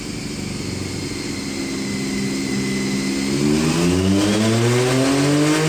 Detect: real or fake real